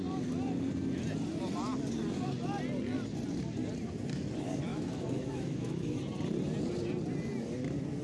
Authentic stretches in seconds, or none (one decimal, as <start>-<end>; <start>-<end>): 0.0-4.7; 6.0-8.0